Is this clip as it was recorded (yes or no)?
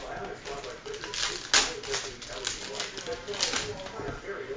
yes